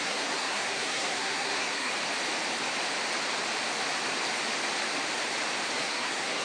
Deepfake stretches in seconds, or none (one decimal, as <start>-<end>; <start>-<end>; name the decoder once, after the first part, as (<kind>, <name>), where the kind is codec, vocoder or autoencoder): 0.0-1.9 (codec, SNAC); 5.7-6.4